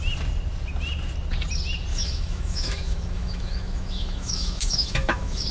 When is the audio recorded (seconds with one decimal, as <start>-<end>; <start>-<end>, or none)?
0.0-1.9